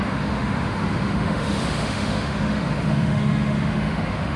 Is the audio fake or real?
fake